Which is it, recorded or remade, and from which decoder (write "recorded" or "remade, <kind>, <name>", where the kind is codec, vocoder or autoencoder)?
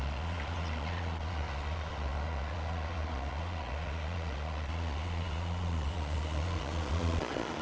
remade, vocoder, Vocos